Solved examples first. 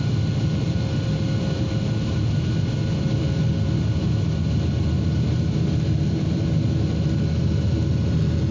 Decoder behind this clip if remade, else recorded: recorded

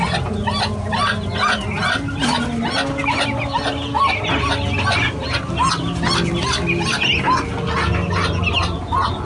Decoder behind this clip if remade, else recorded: recorded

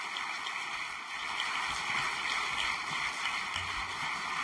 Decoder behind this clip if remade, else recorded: recorded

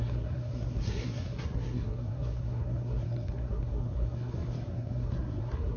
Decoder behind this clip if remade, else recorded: remade, codec, SNAC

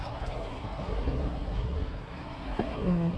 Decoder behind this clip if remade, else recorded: remade, codec, SNAC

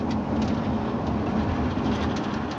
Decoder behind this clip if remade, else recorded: recorded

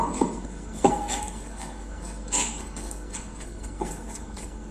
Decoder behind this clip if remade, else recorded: remade, codec, SNAC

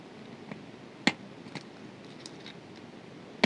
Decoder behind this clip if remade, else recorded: recorded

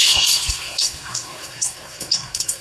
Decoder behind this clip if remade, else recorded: remade, codec, SNAC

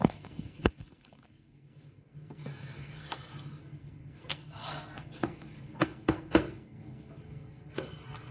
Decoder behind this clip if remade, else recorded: remade, codec, SNAC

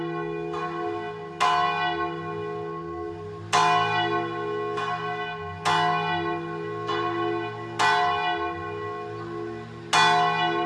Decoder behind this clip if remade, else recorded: recorded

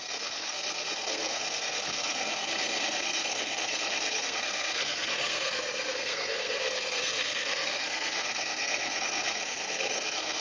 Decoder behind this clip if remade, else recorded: remade, codec, SNAC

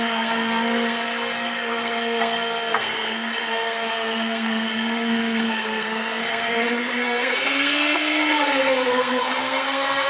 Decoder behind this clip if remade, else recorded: remade, codec, SNAC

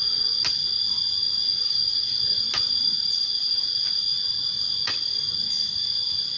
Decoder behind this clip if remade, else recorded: recorded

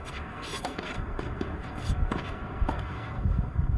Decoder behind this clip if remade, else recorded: remade, codec, SNAC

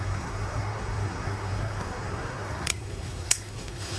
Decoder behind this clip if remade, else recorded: remade, codec, SNAC